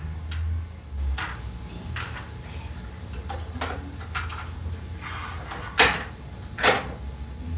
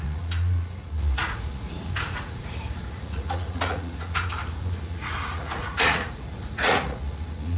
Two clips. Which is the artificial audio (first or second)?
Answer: second